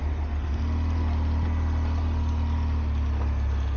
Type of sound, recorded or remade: recorded